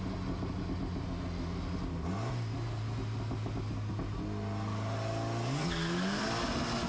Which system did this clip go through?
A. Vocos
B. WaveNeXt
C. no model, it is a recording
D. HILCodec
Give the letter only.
C